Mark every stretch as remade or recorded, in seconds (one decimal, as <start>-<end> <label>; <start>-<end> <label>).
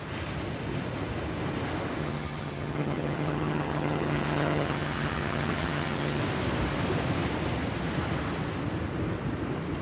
0.0-2.0 recorded; 2.0-6.2 remade; 6.2-9.8 recorded